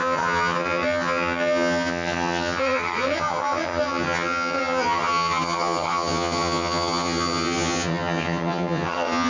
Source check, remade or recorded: remade